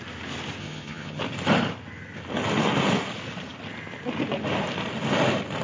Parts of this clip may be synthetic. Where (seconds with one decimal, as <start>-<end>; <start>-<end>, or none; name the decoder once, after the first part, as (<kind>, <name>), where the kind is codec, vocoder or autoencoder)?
0.6-1.2 (vocoder, HiFi-GAN)